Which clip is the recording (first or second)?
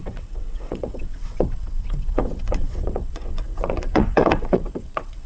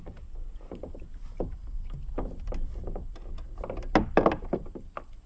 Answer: second